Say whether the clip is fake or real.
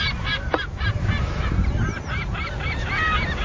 real